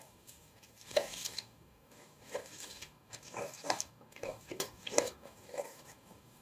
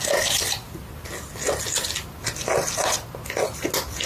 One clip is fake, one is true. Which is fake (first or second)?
first